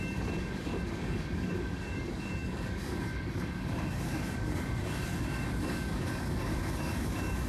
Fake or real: fake